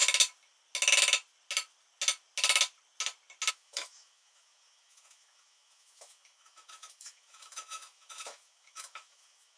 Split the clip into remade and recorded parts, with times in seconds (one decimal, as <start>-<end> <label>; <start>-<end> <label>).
0.0-3.5 recorded; 3.5-9.6 remade